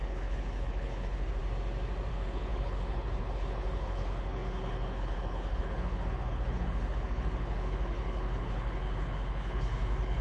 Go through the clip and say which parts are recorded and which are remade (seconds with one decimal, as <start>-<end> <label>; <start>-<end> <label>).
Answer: 0.0-1.4 remade; 1.4-2.1 recorded; 2.1-10.2 remade